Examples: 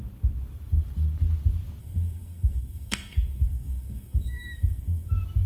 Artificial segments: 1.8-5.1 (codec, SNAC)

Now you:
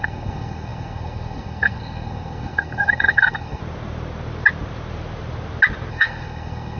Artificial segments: 0.0-3.6 (codec, SNAC); 5.9-6.8

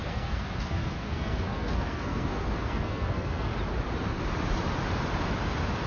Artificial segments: 0.0-3.5 (codec, SNAC)

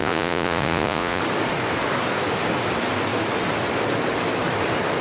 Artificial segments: 0.0-1.2 (vocoder, Vocos)